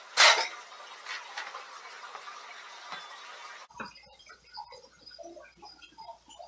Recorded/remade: recorded